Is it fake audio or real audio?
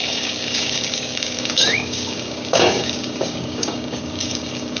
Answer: fake